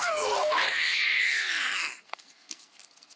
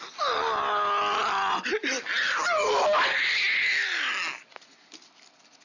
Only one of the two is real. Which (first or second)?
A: second